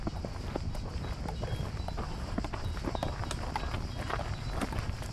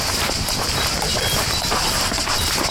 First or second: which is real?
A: first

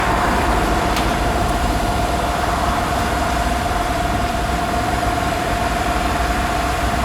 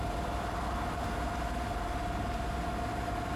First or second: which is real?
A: second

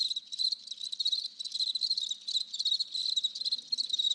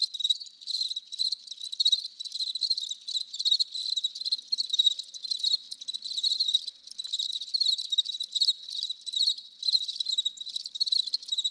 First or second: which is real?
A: first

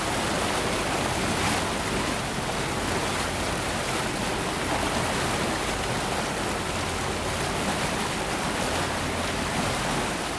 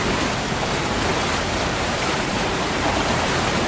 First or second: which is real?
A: first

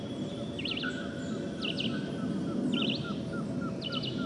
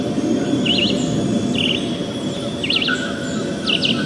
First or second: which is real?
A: second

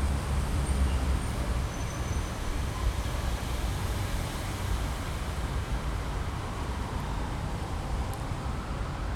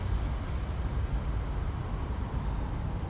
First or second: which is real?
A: second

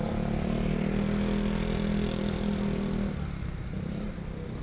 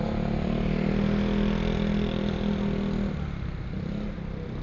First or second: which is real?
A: second